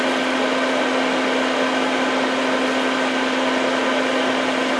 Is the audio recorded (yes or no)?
yes